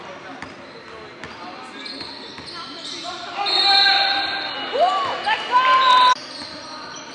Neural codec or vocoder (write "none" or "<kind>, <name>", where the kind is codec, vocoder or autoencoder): none